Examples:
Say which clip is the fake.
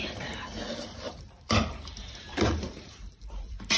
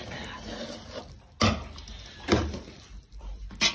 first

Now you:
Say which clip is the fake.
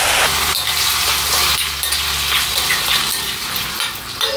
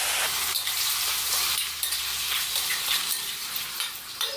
second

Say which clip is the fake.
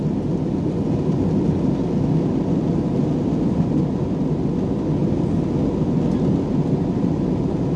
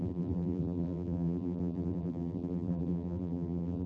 second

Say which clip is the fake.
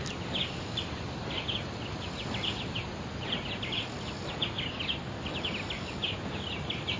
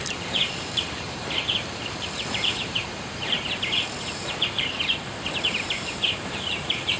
second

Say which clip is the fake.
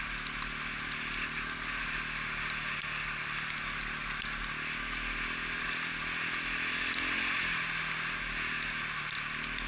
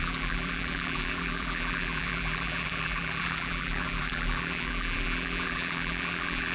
second